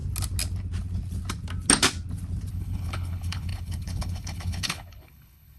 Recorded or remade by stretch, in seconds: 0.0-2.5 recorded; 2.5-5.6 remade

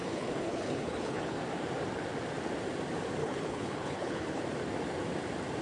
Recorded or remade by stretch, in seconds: 0.0-1.4 remade; 1.4-3.2 recorded; 3.2-4.4 remade; 4.4-5.6 recorded